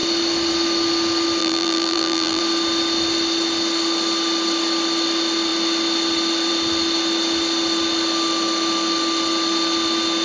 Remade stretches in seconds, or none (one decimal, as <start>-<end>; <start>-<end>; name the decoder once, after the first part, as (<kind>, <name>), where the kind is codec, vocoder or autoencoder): 1.4-2.4 (vocoder, BigVGAN v2)